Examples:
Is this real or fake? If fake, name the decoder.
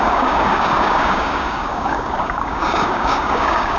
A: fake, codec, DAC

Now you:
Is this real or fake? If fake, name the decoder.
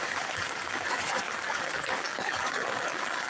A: fake, codec, DAC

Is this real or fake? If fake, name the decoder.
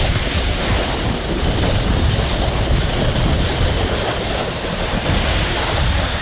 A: real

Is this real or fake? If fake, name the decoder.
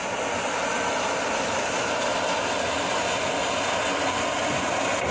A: real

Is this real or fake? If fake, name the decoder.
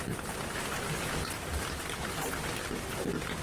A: real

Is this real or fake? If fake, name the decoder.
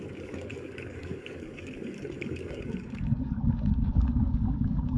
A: fake, codec, DAC